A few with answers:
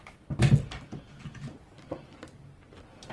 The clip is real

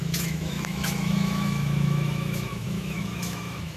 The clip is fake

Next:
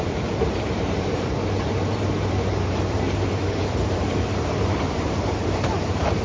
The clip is fake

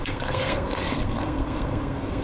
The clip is fake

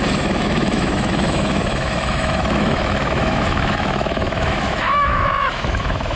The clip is fake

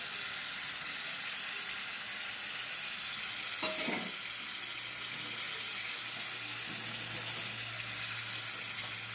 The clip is real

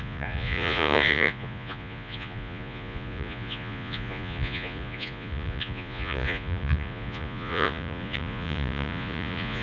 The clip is fake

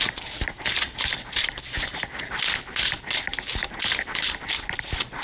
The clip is real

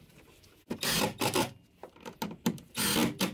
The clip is real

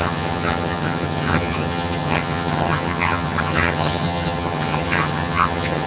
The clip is fake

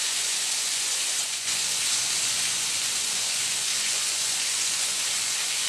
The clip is fake